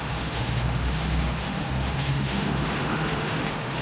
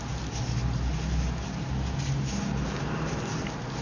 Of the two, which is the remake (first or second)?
first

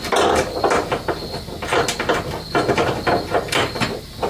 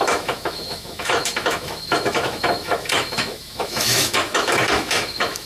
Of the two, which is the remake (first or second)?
second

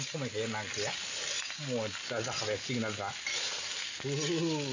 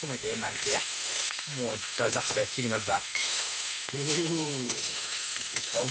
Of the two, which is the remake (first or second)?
second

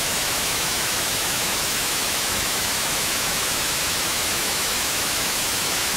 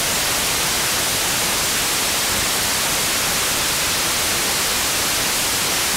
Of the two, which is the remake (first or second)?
first